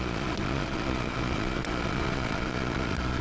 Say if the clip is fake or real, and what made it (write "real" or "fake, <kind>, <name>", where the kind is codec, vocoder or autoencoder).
fake, vocoder, Vocos